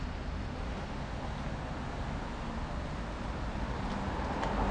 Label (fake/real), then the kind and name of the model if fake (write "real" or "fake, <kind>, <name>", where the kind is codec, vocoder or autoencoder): real